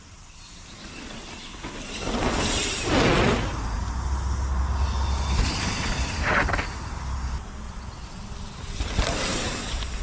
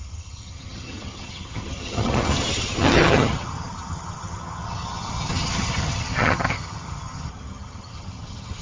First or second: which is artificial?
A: second